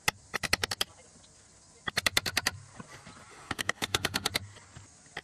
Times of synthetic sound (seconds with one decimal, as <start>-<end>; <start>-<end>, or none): 3.3-4.3